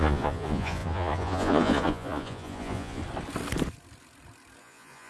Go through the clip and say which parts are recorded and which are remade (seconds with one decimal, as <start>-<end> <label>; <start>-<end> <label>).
0.0-3.0 remade; 3.0-4.6 recorded; 4.6-5.1 remade